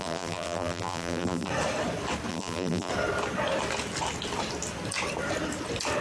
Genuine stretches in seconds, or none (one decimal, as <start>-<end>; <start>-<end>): 1.5-2.3; 2.9-6.0